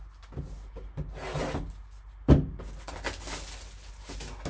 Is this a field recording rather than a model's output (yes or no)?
yes